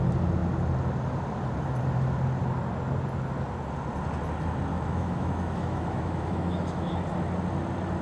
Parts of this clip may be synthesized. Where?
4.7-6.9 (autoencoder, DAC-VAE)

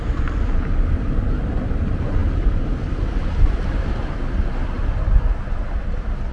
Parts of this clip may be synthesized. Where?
none

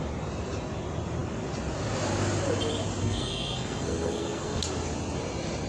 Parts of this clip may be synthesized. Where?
3.0-4.6 (codec, SNAC)

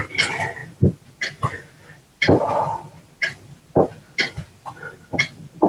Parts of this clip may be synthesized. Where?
none

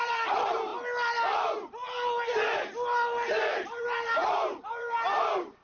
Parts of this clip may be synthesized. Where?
0.0-0.7 (vocoder, BigVGAN v2); 3.8-4.2; 4.7-5.6

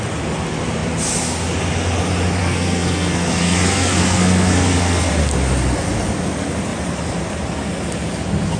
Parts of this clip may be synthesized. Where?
2.4-5.1 (codec, SNAC)